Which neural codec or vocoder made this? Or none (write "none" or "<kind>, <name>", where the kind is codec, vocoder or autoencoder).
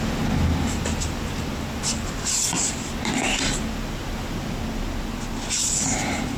none